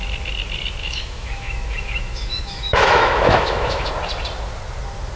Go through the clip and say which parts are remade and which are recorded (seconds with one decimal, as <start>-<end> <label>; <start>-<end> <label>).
0.0-0.8 recorded; 0.8-3.9 remade; 3.9-5.2 recorded